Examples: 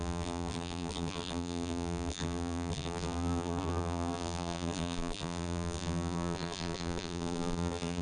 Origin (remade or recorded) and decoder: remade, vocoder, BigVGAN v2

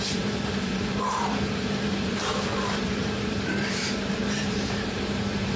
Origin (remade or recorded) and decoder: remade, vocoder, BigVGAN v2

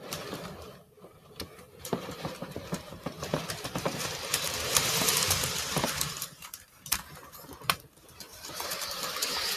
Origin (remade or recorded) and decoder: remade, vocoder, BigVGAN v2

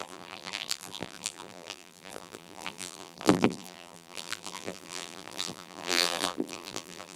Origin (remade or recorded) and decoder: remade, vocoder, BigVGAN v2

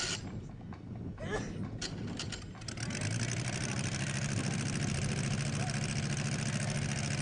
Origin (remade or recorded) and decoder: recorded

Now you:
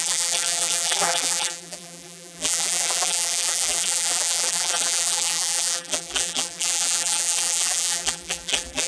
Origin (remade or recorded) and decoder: remade, vocoder, BigVGAN v2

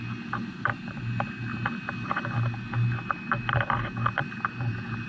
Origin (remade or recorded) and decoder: recorded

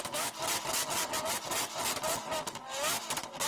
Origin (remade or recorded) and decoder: recorded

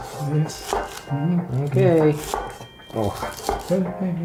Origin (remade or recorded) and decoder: recorded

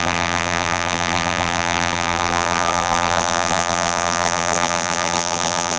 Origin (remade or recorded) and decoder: remade, vocoder, BigVGAN v2